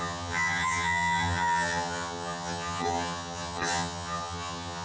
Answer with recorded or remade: remade